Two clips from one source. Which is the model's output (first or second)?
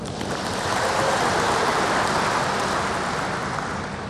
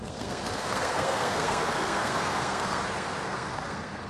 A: second